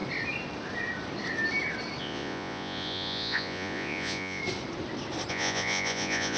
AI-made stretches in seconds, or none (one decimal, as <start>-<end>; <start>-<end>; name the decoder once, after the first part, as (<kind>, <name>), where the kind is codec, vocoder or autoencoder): 2.0-4.4 (vocoder, Vocos); 5.3-6.4